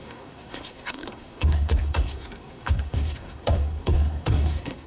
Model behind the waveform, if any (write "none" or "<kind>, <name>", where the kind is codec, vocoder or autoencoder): codec, SNAC